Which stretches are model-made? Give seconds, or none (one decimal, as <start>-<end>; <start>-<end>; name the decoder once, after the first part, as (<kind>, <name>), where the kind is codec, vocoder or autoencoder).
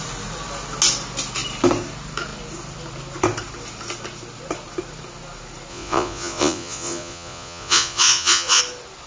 5.7-8.6 (vocoder, Vocos)